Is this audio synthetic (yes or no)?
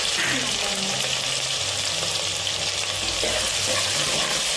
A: no